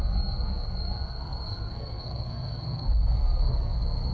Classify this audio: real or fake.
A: fake